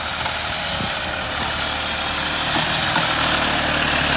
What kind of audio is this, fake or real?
real